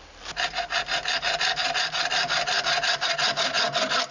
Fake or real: real